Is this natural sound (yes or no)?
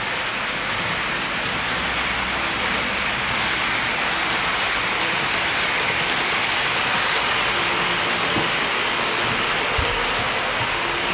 yes